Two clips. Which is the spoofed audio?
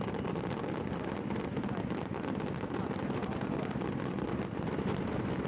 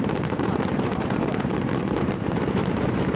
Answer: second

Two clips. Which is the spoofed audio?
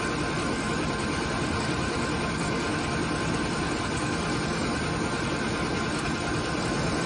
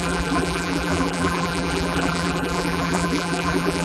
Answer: second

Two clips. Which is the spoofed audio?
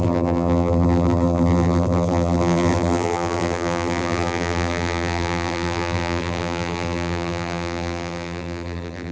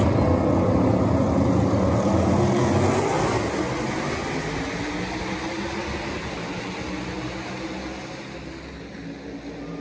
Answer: first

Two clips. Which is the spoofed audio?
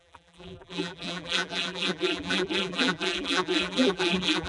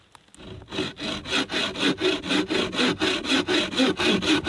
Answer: first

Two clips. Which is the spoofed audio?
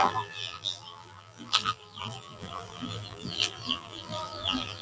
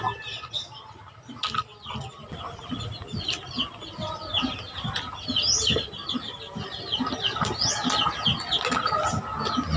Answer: first